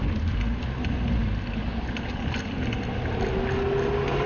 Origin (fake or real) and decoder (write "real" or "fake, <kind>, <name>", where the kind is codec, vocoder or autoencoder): real